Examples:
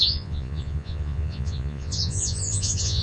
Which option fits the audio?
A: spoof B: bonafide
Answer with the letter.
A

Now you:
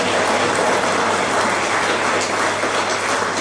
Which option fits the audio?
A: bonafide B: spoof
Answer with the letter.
A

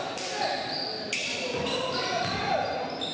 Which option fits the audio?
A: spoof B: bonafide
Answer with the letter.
B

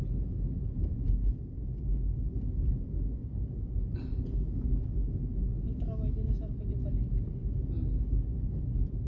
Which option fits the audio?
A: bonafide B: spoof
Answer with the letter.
A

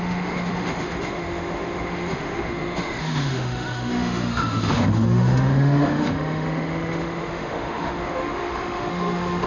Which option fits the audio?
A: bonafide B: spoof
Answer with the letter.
B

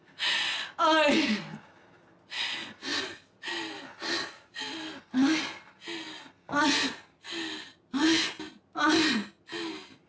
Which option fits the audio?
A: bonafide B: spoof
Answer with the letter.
A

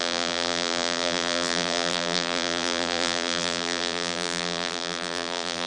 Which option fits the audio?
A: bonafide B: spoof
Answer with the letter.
B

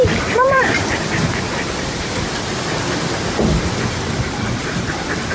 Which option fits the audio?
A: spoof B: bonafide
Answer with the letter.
A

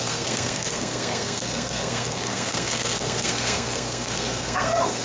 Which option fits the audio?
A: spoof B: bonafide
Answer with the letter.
A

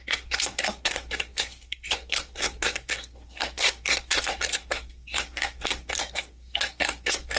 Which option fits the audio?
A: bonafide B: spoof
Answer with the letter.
B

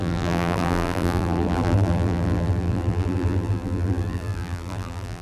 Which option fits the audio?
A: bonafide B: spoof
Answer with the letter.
B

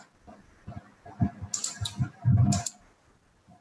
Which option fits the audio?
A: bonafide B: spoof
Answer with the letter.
A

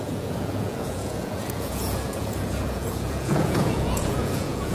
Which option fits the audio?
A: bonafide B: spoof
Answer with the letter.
B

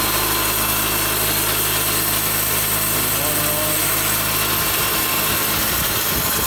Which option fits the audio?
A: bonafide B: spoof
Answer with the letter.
A